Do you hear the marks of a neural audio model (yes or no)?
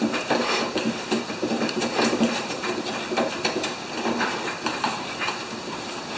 yes